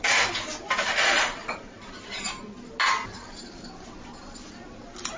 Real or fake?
real